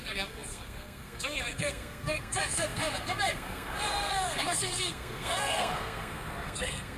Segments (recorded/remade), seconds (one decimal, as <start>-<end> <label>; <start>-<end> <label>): 0.0-7.0 remade